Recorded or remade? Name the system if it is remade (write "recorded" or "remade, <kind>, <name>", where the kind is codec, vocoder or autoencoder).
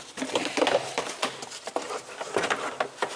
recorded